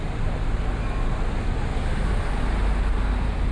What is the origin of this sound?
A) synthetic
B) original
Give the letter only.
B